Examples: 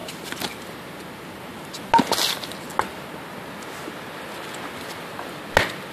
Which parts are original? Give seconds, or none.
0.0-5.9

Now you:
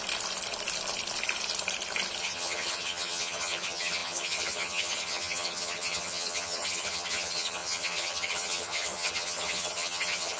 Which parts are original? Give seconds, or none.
0.0-2.2

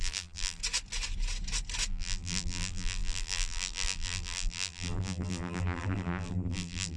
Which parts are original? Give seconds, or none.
0.6-1.9

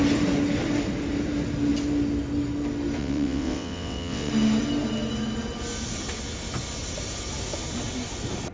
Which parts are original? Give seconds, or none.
0.0-3.0; 4.3-8.5

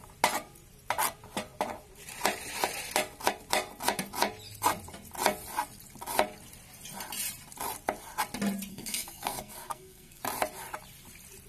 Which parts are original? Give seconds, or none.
0.0-8.7; 10.2-11.5